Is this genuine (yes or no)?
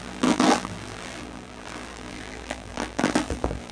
no